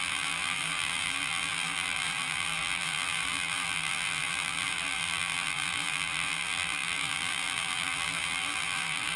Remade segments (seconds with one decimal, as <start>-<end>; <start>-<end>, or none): 0.0-9.2